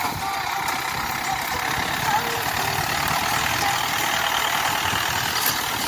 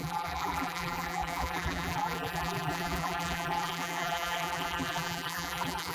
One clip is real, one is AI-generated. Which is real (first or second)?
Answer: first